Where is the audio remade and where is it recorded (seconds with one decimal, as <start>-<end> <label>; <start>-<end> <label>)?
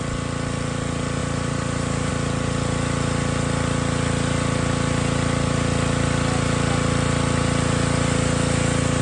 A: 0.0-1.2 recorded; 1.2-2.1 remade; 2.1-9.0 recorded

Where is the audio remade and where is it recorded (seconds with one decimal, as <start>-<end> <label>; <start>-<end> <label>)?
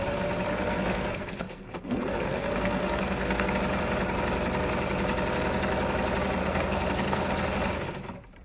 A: 0.0-0.5 recorded; 0.5-3.5 remade; 3.5-6.4 recorded; 6.4-7.3 remade; 7.3-8.4 recorded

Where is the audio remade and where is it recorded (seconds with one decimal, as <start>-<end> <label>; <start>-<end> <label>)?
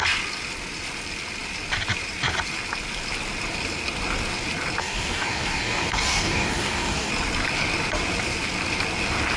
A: 0.0-4.8 recorded; 4.8-7.1 remade; 7.1-9.4 recorded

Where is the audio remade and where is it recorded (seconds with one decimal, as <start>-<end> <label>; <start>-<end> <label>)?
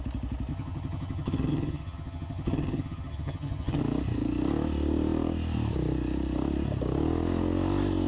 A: 0.0-0.5 recorded; 0.5-3.8 remade; 3.8-8.1 recorded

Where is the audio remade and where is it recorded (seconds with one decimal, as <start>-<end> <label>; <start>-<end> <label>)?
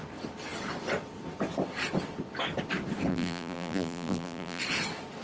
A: 0.0-3.1 recorded; 3.1-4.6 remade; 4.6-5.2 recorded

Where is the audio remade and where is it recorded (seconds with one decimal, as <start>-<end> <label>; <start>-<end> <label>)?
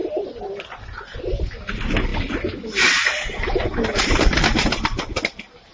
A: 0.0-5.7 recorded